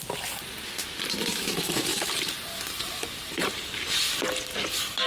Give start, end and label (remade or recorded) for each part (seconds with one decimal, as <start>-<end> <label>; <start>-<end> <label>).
0.0-1.2 recorded; 1.2-2.1 remade; 2.1-5.1 recorded